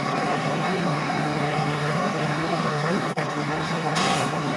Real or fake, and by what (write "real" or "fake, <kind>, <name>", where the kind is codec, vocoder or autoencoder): fake, codec, SNAC